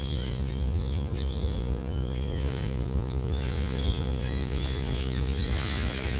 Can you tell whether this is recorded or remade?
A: remade